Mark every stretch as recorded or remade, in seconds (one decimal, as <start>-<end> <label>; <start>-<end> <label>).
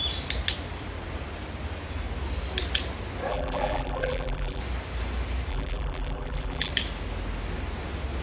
0.0-3.3 recorded; 3.3-4.6 remade; 4.6-5.5 recorded; 5.5-6.7 remade; 6.7-8.2 recorded